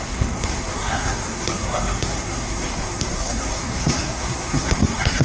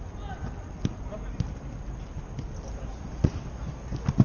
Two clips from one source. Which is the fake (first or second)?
first